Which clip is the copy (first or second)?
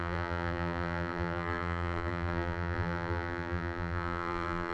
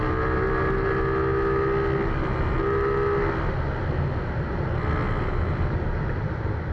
first